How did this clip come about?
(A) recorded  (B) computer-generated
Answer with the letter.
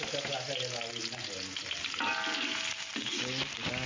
A